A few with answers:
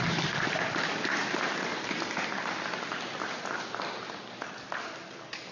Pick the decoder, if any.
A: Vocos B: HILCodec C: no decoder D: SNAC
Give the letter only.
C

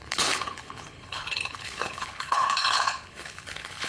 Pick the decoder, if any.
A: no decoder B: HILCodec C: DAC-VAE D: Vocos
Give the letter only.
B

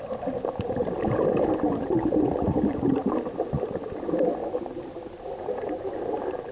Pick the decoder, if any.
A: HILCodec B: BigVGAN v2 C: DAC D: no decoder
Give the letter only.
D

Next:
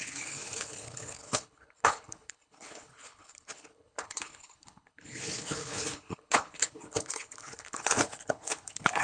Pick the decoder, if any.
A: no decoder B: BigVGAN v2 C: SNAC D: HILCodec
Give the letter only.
D